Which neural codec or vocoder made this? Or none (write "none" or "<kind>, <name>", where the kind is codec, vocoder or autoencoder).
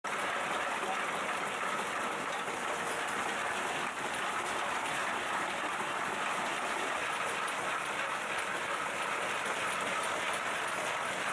none